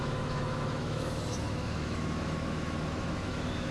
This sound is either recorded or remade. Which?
remade